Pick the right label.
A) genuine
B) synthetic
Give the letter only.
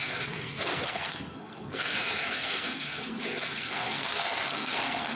B